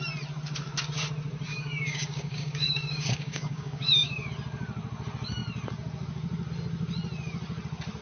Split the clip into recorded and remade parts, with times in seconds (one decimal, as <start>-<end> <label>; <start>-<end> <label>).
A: 0.0-1.5 recorded; 1.5-4.3 remade; 4.3-8.0 recorded